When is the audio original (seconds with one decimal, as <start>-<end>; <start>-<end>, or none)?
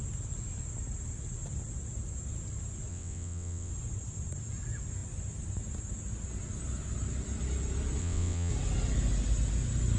0.0-2.9; 3.7-8.0; 8.5-10.0